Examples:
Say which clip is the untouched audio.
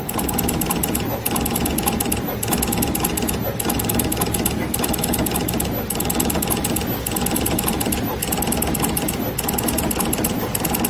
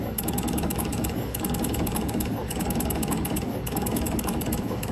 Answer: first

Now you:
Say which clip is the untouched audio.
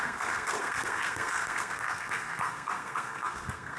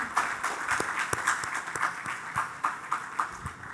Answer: second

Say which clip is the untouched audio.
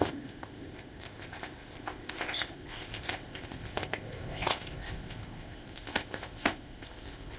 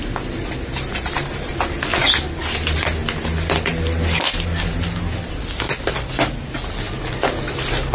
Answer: second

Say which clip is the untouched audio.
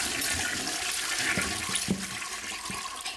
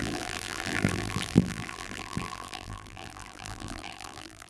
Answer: first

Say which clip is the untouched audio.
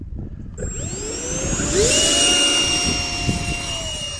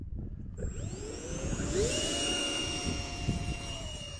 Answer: first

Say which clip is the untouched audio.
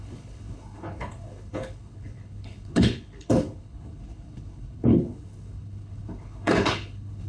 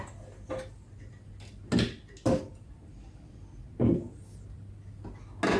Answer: second